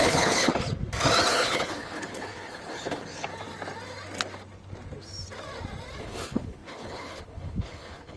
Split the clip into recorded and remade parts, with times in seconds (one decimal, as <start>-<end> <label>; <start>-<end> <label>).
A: 0.0-0.5 remade; 0.5-1.3 recorded; 1.3-3.3 remade; 3.3-6.0 recorded; 6.0-8.2 remade